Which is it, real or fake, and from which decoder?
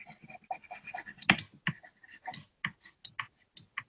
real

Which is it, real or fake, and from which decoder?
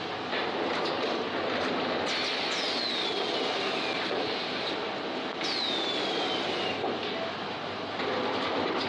real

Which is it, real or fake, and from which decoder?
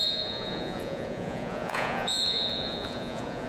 fake, vocoder, Vocos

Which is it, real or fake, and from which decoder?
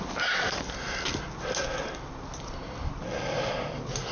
real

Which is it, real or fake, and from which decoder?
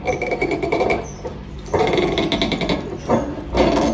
real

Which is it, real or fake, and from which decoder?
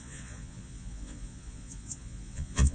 fake, vocoder, Vocos